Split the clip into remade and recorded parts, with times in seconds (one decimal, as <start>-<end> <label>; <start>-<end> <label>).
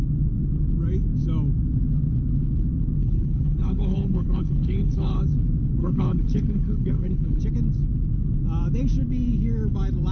0.0-3.0 recorded; 3.0-5.2 remade; 5.2-5.8 recorded; 5.8-7.4 remade; 7.4-10.1 recorded